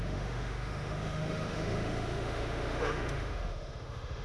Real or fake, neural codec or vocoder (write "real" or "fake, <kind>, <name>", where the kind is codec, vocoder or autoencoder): fake, autoencoder, DAC-VAE